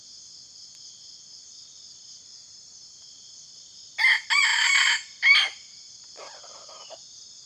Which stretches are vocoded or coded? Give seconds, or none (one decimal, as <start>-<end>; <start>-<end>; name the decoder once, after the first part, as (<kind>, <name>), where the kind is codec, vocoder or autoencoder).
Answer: 4.5-6.4 (vocoder, BigVGAN v2)